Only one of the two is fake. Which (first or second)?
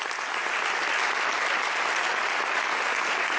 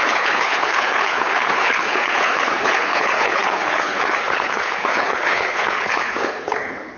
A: second